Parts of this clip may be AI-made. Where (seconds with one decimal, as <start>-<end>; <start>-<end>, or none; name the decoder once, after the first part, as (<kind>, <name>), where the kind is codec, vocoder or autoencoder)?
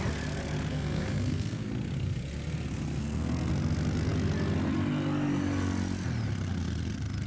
0.7-1.7 (codec, SNAC); 3.0-3.5